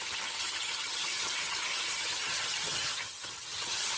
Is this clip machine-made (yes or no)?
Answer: yes